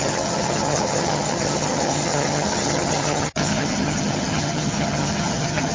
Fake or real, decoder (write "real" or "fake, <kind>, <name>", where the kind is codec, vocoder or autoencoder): fake, vocoder, HiFi-GAN